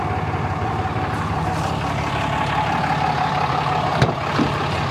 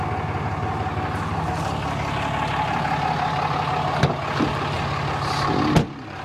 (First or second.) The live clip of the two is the second